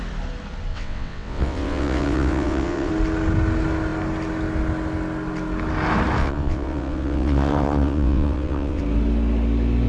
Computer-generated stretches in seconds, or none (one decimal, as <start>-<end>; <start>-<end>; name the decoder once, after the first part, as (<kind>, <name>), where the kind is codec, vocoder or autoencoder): 0.7-2.9 (vocoder, WaveNeXt); 6.2-8.8